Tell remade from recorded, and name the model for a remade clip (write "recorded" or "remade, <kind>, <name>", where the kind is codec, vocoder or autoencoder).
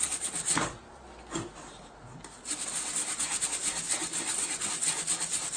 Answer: recorded